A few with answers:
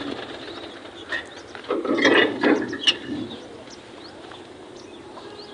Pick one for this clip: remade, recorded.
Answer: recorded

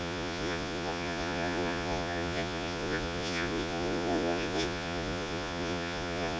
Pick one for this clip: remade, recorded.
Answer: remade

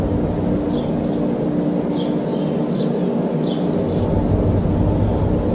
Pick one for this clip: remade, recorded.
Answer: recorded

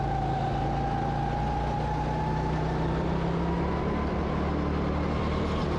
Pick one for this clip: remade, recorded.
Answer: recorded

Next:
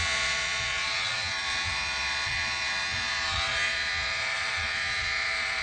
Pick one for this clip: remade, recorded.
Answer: remade